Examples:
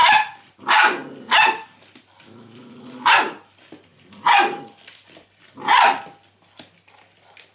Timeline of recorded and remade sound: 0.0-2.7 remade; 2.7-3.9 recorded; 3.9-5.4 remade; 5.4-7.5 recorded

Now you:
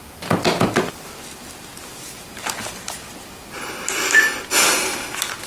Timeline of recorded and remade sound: 0.0-1.1 remade; 1.1-5.5 recorded